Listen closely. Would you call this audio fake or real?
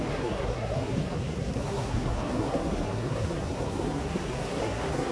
fake